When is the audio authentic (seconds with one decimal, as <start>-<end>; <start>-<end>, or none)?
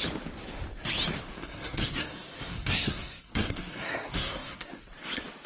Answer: 0.0-1.4; 4.7-5.5